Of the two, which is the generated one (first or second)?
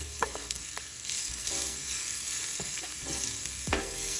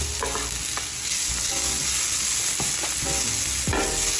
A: first